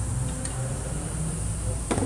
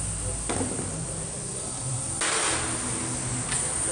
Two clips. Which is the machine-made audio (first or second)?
first